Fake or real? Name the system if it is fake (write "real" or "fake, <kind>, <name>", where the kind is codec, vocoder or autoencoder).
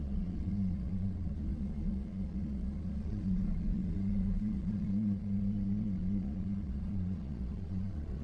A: fake, vocoder, Vocos